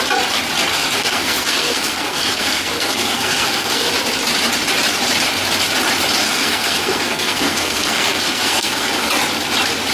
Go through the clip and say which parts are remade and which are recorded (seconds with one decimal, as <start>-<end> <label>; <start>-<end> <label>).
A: 0.0-0.7 recorded; 0.7-3.9 remade; 3.9-6.2 recorded; 6.2-9.1 remade; 9.1-9.9 recorded